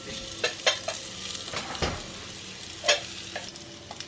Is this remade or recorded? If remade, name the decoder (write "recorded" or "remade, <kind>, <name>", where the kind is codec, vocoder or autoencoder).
recorded